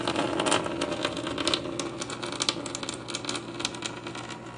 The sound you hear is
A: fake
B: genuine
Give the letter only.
B